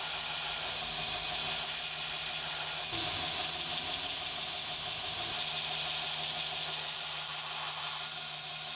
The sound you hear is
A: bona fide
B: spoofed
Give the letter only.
A